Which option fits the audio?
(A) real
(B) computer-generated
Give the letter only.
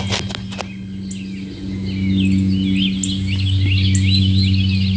A